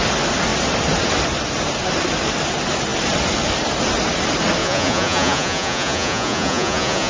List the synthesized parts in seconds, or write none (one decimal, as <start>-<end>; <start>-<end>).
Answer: 4.6-7.1